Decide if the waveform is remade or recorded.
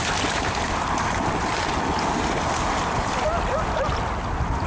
recorded